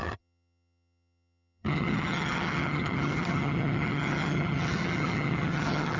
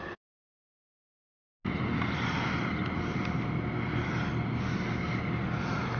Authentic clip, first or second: second